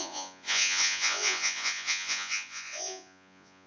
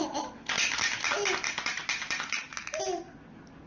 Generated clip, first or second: first